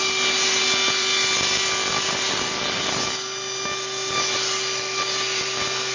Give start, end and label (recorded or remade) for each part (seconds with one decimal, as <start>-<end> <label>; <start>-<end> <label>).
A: 0.0-5.9 recorded